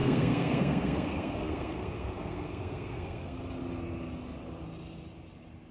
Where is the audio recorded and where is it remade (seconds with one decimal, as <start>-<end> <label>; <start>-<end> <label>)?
0.0-3.4 remade; 3.4-5.7 recorded